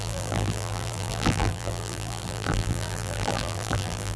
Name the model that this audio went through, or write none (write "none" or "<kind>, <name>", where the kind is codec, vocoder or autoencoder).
vocoder, BigVGAN v2